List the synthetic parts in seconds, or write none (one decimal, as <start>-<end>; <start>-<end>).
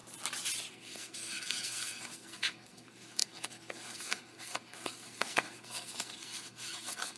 0.7-7.2